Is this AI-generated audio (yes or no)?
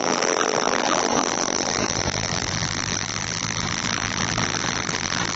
yes